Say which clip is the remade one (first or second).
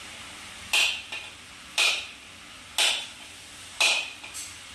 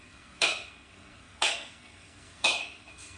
second